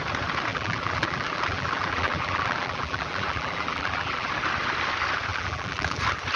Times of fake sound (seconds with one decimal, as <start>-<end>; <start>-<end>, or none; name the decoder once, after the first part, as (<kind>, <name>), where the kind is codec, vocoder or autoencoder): 0.5-4.3 (vocoder, BigVGAN v2); 5.3-6.0